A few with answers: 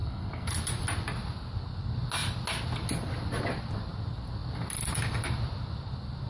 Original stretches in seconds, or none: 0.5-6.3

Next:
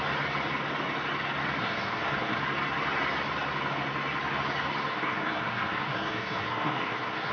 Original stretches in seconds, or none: 0.0-1.6; 2.4-4.9

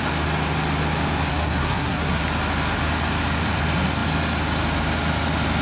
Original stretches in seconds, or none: 0.0-1.3; 2.2-5.6

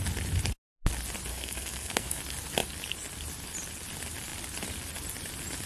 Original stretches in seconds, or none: 0.0-1.3; 2.2-5.7

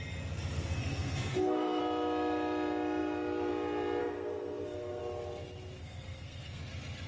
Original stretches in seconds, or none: 0.0-0.8; 1.8-4.0; 5.0-5.8; 6.6-7.1

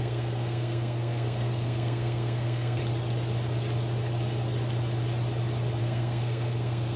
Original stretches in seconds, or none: 2.8-5.8

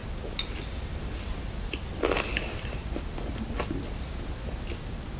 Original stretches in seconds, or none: 0.0-5.2